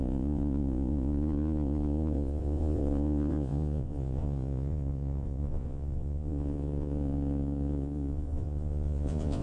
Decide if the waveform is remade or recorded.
remade